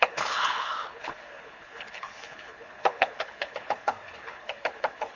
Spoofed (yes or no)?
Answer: yes